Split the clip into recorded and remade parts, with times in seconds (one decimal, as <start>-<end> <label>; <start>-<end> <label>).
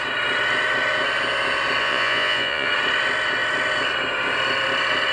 0.0-1.8 recorded; 1.8-2.7 remade; 2.7-5.1 recorded